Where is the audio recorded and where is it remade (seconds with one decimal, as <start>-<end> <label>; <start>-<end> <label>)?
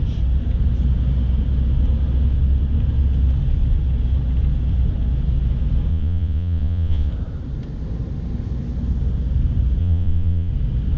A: 0.0-5.9 recorded; 5.9-7.1 remade; 7.1-9.8 recorded; 9.8-10.5 remade; 10.5-11.0 recorded